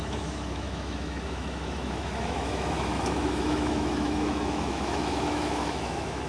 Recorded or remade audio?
remade